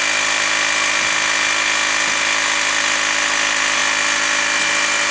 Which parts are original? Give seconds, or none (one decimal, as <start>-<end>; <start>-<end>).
0.0-5.1